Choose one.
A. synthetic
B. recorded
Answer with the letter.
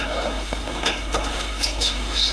A